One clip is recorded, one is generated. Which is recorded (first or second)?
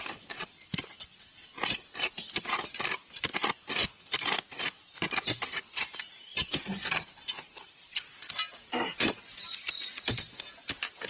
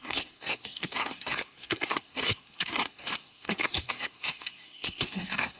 first